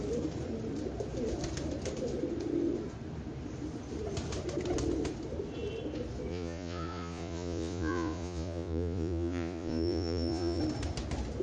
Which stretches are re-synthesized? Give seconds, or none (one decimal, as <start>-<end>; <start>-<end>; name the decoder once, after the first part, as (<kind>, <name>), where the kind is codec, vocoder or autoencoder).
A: 6.3-10.6 (vocoder, Vocos)